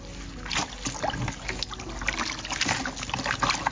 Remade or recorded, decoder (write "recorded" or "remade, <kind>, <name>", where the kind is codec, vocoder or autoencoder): recorded